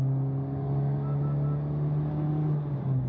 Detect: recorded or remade recorded